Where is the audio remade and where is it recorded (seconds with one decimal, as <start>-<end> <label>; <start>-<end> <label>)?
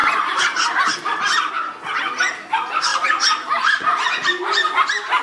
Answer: 0.0-1.5 remade; 1.5-2.9 recorded; 2.9-4.4 remade; 4.4-5.2 recorded